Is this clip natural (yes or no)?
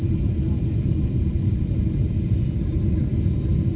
yes